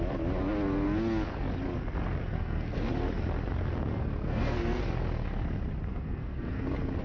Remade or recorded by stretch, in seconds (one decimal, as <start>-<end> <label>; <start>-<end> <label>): 0.0-2.2 recorded; 2.2-2.9 remade; 2.9-3.9 recorded; 3.9-4.8 remade; 4.8-5.9 recorded; 5.9-6.6 remade; 6.6-7.0 recorded